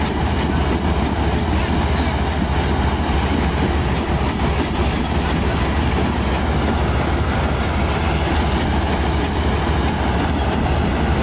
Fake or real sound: real